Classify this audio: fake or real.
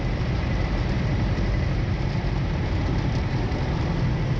fake